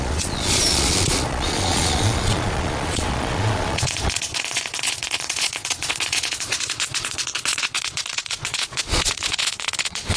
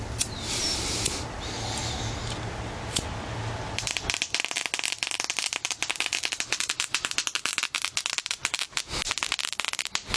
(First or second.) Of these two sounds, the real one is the second